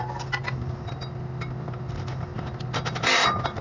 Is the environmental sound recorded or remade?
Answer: recorded